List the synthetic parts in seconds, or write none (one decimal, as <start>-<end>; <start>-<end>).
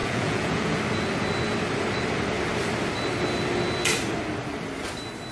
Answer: 0.0-0.8